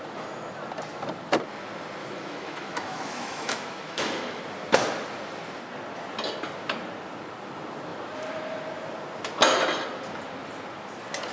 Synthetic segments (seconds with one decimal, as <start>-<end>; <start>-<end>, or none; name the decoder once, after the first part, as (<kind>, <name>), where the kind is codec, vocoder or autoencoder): 2.0-4.4 (autoencoder, DAC-VAE)